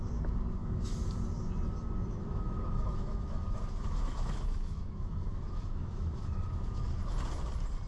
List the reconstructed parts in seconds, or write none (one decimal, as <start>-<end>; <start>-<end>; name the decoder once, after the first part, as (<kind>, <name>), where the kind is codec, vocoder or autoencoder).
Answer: 0.6-1.1 (autoencoder, DAC-VAE); 2.2-6.8